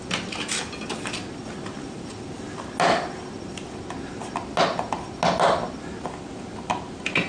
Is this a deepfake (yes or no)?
no